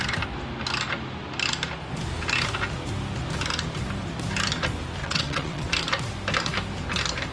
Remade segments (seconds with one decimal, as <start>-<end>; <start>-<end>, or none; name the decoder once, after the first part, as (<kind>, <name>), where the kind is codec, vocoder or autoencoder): 5.0-5.7 (vocoder, WaveNeXt)